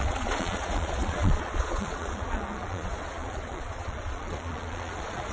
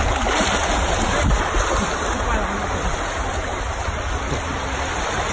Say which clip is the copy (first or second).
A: first